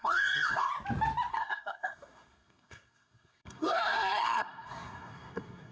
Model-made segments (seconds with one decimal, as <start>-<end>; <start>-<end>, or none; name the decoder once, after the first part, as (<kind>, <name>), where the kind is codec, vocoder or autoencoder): 0.0-0.7 (codec, SNAC); 1.3-5.7